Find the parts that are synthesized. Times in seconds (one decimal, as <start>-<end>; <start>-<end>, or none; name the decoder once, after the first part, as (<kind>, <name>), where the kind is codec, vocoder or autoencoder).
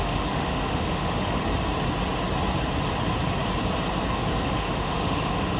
0.0-1.4 (autoencoder, DAC-VAE); 4.5-5.6